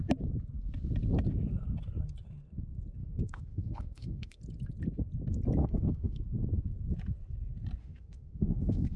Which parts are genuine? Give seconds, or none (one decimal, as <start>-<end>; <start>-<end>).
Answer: 0.0-3.0; 4.4-5.6; 6.2-7.8